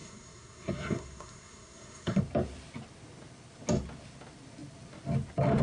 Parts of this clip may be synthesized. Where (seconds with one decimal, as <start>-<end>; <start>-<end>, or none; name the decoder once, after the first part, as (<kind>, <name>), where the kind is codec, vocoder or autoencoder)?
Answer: 0.0-2.2 (codec, SNAC)